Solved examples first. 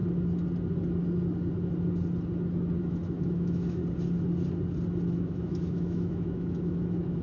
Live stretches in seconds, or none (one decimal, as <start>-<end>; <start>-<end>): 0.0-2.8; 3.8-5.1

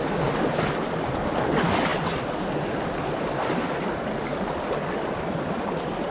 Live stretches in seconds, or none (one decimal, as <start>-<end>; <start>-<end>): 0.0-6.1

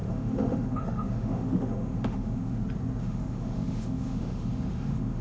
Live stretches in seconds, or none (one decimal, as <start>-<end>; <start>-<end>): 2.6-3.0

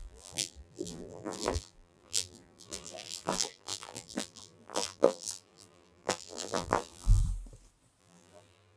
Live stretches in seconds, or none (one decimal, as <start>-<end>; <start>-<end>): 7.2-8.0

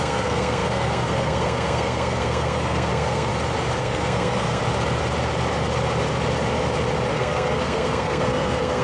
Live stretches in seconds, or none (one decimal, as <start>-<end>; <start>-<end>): 3.3-3.8; 4.6-7.1